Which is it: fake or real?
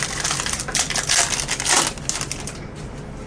real